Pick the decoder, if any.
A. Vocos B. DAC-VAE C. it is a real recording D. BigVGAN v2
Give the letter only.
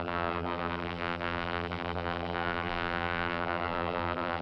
D